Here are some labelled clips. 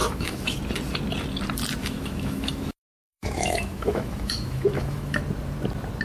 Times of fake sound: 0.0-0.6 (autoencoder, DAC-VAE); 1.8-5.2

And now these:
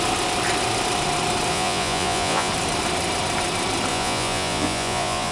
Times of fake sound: 1.5-2.5 (vocoder, Vocos); 3.9-5.3

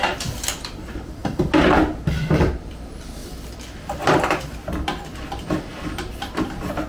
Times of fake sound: 0.0-1.2 (vocoder, BigVGAN v2); 2.2-6.9

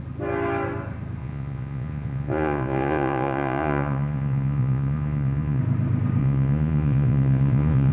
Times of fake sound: 1.2-5.6 (vocoder, Vocos); 6.2-7.9